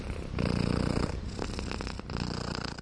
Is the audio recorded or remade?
recorded